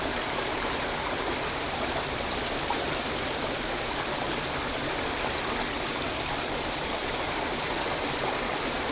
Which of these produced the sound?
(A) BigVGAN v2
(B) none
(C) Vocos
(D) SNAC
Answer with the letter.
A